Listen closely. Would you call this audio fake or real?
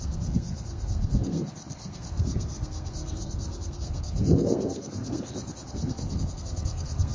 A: fake